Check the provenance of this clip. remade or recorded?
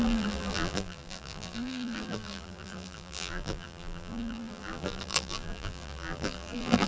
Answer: remade